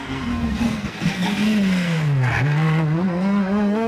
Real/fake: fake